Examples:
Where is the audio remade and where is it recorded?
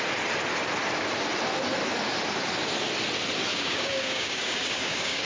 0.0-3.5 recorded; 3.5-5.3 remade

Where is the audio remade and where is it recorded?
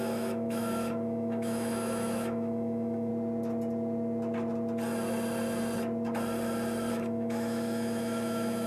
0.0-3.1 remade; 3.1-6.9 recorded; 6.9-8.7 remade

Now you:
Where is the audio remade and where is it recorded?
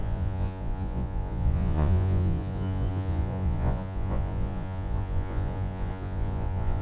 0.0-6.8 remade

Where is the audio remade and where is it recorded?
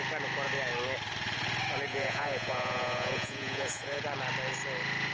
0.0-1.9 recorded; 1.9-4.0 remade; 4.0-5.1 recorded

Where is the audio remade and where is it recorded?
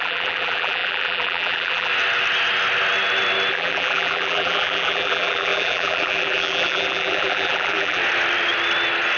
0.0-1.9 remade; 1.9-3.5 recorded; 3.5-8.0 remade; 8.0-9.2 recorded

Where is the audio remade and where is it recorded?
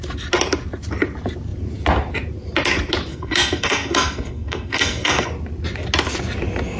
0.0-3.1 recorded; 3.1-5.3 remade; 5.3-6.8 recorded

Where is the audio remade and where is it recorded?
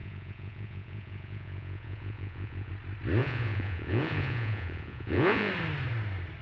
0.0-2.7 remade; 2.7-3.2 recorded; 3.2-5.5 remade; 5.5-6.4 recorded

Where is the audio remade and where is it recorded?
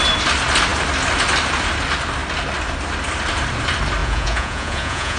0.0-4.0 recorded; 4.0-5.2 remade